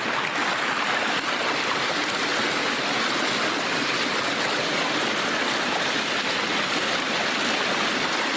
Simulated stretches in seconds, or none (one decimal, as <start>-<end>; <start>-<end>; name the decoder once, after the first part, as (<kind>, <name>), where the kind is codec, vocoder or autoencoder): none